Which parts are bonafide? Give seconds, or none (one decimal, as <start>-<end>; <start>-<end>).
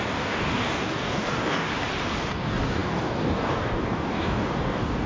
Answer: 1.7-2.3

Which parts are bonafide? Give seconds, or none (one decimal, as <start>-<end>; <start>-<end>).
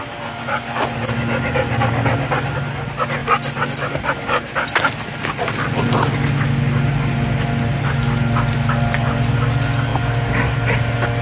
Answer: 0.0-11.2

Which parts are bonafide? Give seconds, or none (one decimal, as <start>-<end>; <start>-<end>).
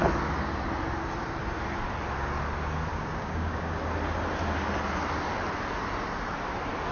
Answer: 0.0-2.9; 3.8-6.9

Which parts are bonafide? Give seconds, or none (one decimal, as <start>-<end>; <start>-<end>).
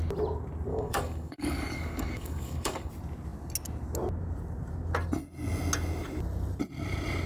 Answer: 0.0-0.7; 2.9-7.3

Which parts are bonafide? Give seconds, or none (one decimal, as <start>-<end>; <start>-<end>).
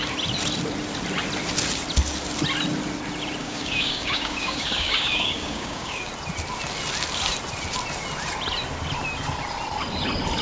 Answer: 0.0-3.4; 6.1-10.4